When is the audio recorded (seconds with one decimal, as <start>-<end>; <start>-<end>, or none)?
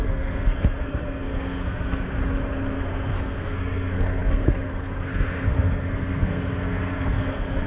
2.2-2.8